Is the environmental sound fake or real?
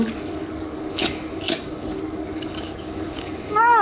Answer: fake